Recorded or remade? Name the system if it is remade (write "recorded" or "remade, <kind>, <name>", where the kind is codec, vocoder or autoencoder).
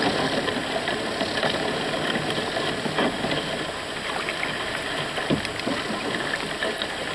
recorded